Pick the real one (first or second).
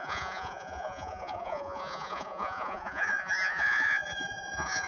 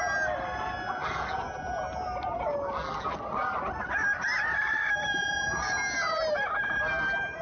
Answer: second